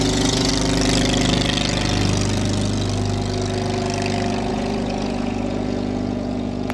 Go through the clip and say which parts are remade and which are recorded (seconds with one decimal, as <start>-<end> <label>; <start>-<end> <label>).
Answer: 0.0-0.5 remade; 0.5-4.5 recorded; 4.5-6.7 remade